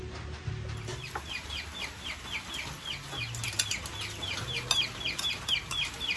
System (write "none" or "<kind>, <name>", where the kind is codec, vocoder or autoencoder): none